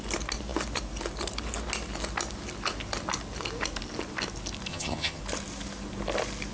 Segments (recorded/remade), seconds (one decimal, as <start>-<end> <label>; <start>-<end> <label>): 0.0-4.7 recorded; 4.7-5.2 remade; 5.2-6.5 recorded